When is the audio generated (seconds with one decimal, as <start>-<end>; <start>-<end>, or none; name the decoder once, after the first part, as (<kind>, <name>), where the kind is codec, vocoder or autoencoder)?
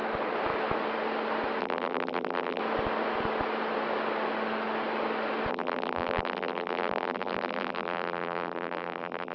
1.6-2.6 (vocoder, BigVGAN v2); 5.5-9.3